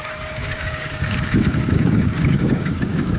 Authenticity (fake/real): fake